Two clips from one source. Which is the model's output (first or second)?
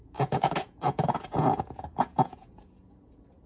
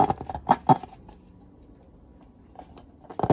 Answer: first